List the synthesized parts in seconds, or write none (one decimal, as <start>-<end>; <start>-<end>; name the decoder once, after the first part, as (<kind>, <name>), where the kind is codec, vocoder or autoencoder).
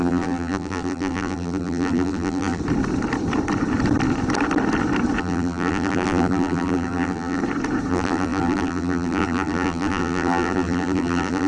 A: 0.0-2.6 (vocoder, BigVGAN v2); 5.2-7.4; 7.9-11.5